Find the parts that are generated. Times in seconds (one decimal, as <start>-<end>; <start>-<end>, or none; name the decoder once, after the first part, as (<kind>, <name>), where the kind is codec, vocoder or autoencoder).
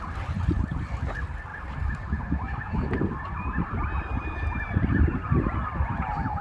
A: none